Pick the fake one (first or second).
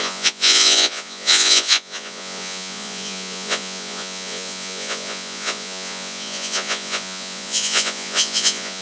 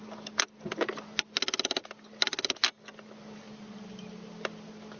first